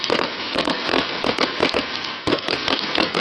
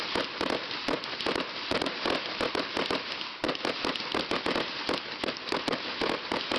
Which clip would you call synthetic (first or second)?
first